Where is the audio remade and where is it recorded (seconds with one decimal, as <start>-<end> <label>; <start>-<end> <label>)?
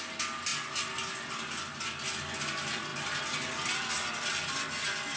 0.0-5.2 recorded